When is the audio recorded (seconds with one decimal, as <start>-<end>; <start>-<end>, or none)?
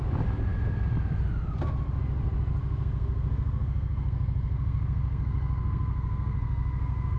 0.0-2.6